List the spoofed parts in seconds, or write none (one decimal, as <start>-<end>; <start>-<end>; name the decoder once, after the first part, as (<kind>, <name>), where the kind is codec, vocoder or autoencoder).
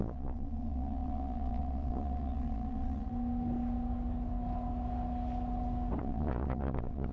0.0-3.1 (vocoder, Vocos); 6.0-7.1